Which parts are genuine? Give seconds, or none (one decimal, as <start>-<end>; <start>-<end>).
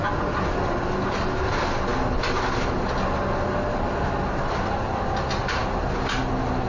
0.0-6.7